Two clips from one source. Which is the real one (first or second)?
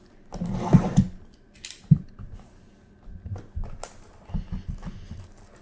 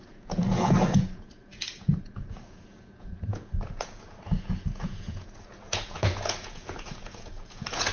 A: first